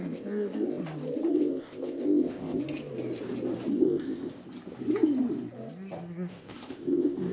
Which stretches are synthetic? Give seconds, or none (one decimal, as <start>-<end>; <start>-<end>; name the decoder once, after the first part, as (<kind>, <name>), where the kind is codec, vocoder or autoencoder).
0.0-0.8 (codec, ZipCodec); 1.3-2.6; 3.7-4.4; 6.3-7.3